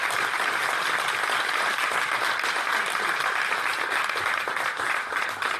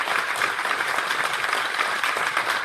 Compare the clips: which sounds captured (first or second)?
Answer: first